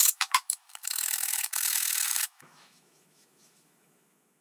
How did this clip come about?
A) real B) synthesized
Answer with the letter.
B